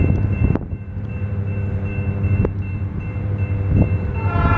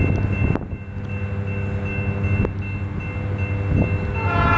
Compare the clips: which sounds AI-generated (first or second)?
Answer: first